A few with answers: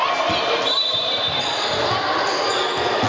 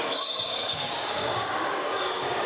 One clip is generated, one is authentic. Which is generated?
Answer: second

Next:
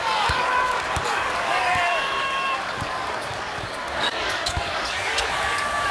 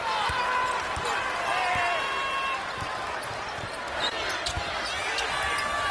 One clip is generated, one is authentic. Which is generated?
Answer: first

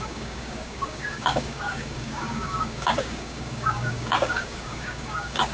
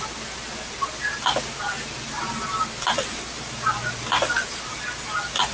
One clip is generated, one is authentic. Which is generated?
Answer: first